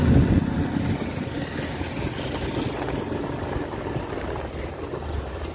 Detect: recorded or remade recorded